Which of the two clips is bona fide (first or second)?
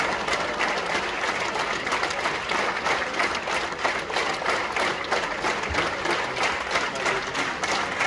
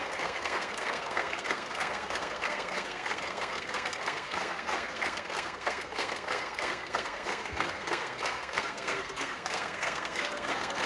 first